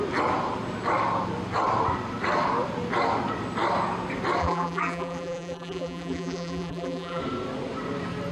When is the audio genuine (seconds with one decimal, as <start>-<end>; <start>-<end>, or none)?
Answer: 0.0-4.4; 7.2-8.3